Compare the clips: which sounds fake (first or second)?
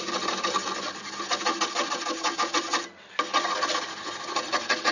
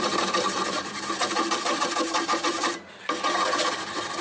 second